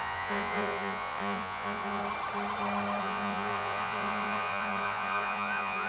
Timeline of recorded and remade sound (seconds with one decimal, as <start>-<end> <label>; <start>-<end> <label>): 0.0-2.0 remade; 2.0-3.0 recorded; 3.0-5.9 remade